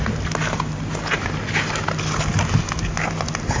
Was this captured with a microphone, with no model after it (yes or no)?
yes